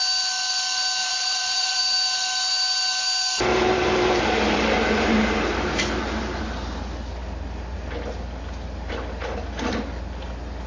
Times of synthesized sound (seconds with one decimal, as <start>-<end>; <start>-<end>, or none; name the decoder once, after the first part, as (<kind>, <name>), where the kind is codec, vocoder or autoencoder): 1.0-1.8 (vocoder, BigVGAN v2); 3.5-6.4